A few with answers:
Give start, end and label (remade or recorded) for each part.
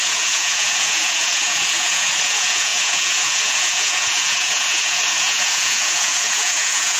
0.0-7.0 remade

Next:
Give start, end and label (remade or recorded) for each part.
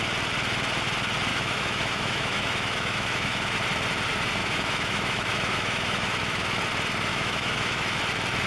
0.0-1.3 recorded; 1.3-3.6 remade; 3.6-4.4 recorded; 4.4-6.6 remade; 6.6-7.1 recorded; 7.1-8.0 remade; 8.0-8.5 recorded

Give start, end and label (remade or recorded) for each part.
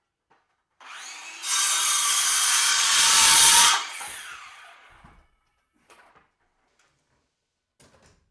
0.0-2.7 recorded; 2.7-6.1 remade; 6.1-8.3 recorded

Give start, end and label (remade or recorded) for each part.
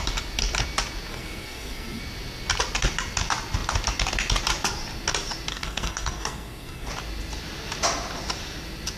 0.0-1.1 recorded; 1.1-2.0 remade; 2.0-5.5 recorded; 5.5-6.9 remade; 6.9-9.0 recorded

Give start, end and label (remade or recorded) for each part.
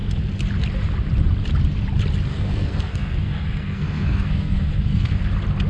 0.0-2.3 recorded; 2.3-5.2 remade; 5.2-5.7 recorded